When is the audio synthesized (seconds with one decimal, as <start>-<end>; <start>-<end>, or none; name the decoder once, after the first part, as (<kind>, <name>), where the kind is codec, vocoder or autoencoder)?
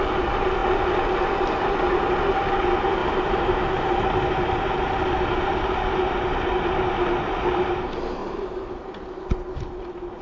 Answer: 3.0-7.8 (vocoder, BigVGAN v2); 8.2-9.0